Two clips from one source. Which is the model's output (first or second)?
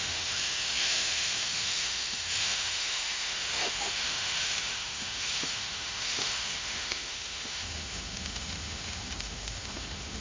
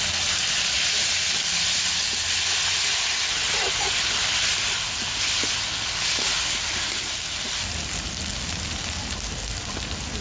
first